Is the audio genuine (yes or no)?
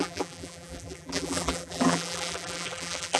no